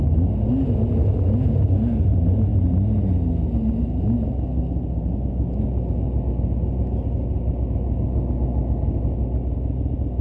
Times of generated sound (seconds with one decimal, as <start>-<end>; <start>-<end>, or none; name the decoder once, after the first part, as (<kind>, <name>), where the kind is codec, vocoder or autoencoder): none